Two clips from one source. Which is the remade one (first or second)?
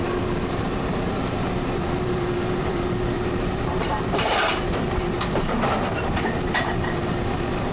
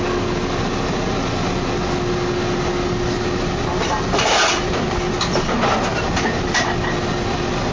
first